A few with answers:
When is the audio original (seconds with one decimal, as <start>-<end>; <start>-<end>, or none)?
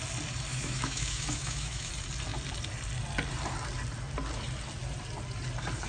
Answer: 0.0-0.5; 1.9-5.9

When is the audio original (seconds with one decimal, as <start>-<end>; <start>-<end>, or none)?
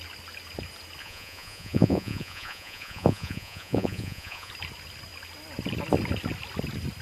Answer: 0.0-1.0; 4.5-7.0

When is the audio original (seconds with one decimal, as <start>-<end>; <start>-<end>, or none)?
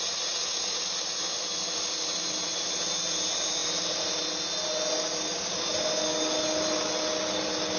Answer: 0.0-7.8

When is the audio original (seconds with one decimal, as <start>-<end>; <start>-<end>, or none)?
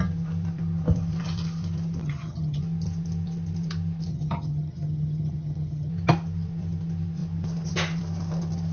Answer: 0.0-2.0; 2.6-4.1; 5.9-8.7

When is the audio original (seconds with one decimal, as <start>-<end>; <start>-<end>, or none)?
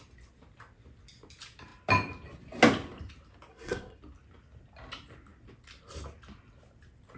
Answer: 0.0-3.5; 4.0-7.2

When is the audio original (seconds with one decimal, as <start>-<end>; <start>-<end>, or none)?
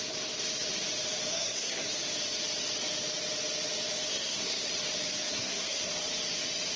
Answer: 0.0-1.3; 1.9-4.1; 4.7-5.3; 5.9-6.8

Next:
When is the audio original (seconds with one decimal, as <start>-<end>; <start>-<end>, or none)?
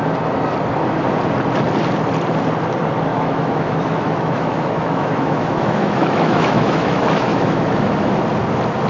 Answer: 0.0-3.1; 8.1-8.9